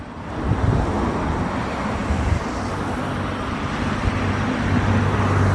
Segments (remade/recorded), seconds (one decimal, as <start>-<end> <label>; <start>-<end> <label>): 0.0-5.5 recorded